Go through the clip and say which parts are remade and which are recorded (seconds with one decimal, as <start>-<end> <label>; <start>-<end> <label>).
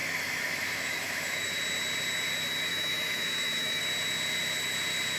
0.0-1.6 remade; 1.6-2.7 recorded; 2.7-3.8 remade; 3.8-5.2 recorded